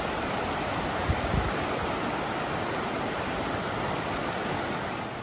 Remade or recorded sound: recorded